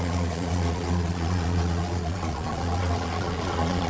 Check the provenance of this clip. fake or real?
fake